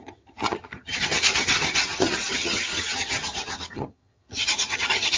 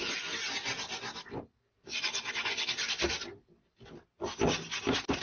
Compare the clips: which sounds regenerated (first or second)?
first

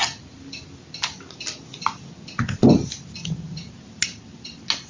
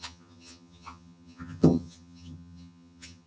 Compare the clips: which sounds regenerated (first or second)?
second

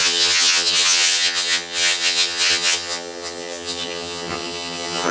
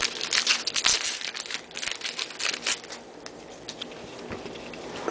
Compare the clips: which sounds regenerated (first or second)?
first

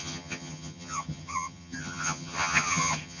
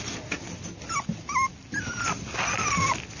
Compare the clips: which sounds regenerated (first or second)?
first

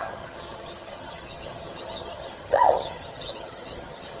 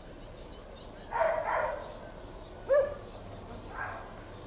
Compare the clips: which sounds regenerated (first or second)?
first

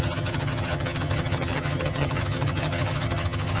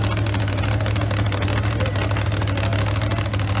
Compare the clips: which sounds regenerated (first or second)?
first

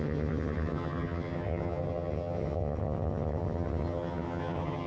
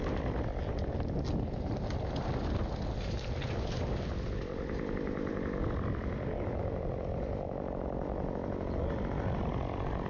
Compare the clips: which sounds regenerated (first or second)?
first